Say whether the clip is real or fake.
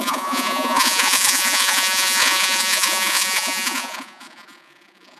fake